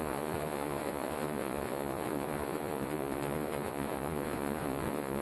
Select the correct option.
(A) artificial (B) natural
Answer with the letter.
A